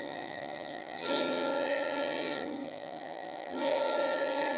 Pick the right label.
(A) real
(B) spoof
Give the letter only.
B